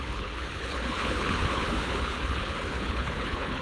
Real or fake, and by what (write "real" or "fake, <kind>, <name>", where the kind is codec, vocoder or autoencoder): fake, codec, HILCodec